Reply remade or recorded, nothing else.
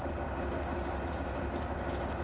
recorded